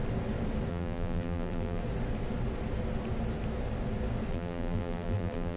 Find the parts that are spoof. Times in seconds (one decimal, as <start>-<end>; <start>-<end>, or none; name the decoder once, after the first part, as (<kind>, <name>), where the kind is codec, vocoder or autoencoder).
0.7-1.8 (vocoder, BigVGAN v2); 4.3-5.6